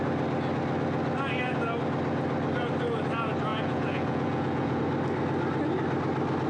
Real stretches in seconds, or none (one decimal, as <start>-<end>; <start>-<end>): 0.0-3.5; 4.8-6.5